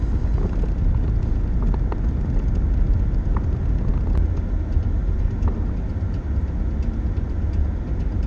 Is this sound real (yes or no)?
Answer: yes